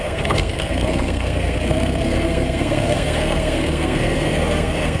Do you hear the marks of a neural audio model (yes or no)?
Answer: yes